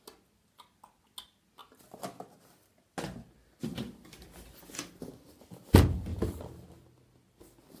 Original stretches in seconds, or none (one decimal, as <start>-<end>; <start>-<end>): 0.0-7.8